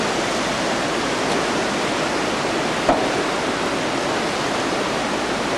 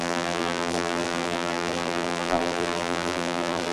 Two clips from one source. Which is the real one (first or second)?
first